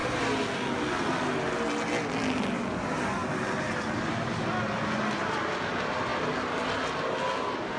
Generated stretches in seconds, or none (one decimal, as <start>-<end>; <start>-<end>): none